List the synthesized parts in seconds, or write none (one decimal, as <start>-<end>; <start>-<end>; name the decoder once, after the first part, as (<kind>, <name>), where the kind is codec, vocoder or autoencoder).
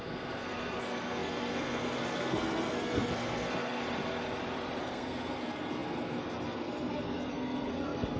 0.0-3.8 (codec, SNAC); 4.8-8.2